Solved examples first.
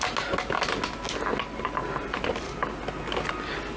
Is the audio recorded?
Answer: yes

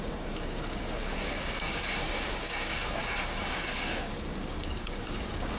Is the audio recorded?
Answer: no